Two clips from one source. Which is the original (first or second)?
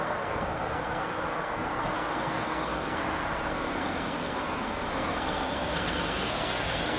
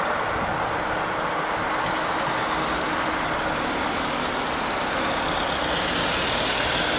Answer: second